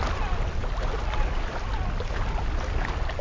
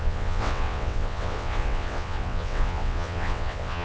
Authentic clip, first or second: first